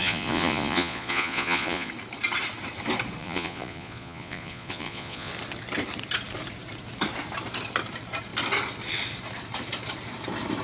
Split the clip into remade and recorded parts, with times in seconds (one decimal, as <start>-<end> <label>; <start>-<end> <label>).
0.0-1.9 remade; 1.9-3.2 recorded; 3.2-5.3 remade; 5.3-10.6 recorded